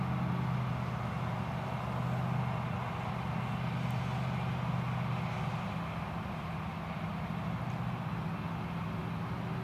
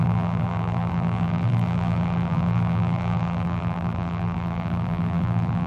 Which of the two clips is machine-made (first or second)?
second